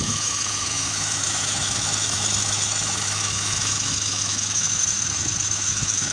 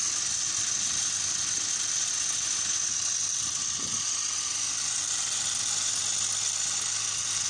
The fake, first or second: first